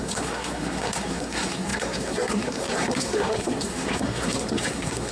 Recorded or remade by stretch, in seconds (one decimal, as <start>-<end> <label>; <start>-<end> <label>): 0.0-5.1 remade

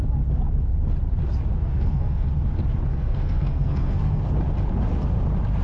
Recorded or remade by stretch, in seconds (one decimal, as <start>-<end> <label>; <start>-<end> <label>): 0.0-1.6 recorded; 1.6-2.3 remade; 2.3-2.9 recorded; 2.9-4.2 remade; 4.2-5.6 recorded